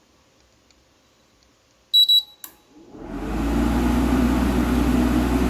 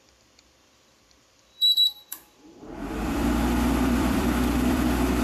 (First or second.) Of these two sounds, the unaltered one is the first